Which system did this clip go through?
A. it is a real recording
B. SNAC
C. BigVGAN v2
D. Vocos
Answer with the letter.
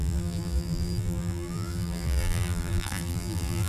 C